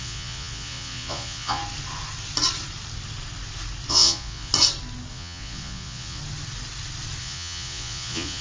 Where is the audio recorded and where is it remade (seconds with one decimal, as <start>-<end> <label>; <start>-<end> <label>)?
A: 0.0-1.6 remade; 1.6-3.9 recorded; 3.9-4.5 remade; 4.5-5.1 recorded; 5.1-6.2 remade; 6.2-7.2 recorded; 7.2-8.4 remade